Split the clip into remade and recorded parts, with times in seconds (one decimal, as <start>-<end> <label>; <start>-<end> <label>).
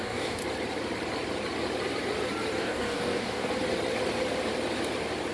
0.0-0.4 remade; 0.4-2.6 recorded; 2.6-3.5 remade; 3.5-5.3 recorded